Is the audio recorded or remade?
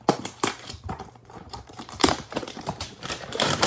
remade